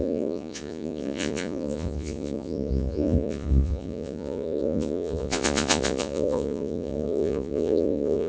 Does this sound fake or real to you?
fake